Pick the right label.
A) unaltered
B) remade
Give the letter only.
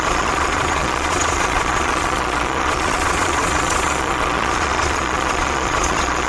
B